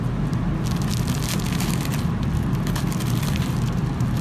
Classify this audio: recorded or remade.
recorded